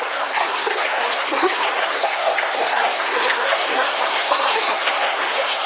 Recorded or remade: remade